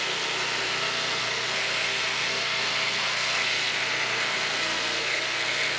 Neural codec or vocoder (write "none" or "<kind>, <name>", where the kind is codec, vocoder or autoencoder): codec, SNAC